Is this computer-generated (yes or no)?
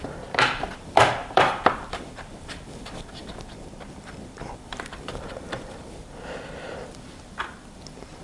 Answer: yes